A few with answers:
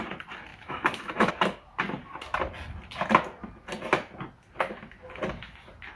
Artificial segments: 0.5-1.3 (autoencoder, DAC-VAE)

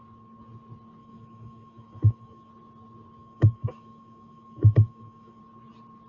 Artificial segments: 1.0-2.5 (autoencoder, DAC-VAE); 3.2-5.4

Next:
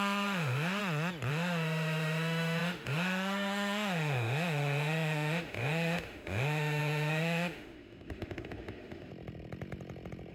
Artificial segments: 0.0-0.8 (autoencoder, DAC-VAE); 1.3-9.1